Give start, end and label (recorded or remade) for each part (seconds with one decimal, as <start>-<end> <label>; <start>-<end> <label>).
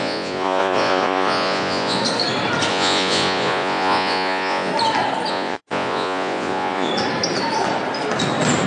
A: 0.0-2.0 remade; 2.0-2.7 recorded; 2.7-4.7 remade; 4.7-5.3 recorded; 5.3-6.9 remade; 6.9-8.7 recorded